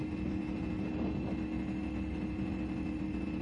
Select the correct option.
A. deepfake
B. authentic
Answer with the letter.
B